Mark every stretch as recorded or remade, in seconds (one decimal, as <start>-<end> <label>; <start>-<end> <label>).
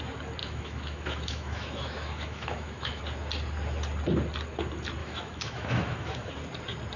0.0-0.4 recorded; 0.4-3.0 remade; 3.0-5.0 recorded; 5.0-6.3 remade; 6.3-7.0 recorded